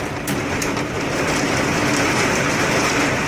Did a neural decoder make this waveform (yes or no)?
no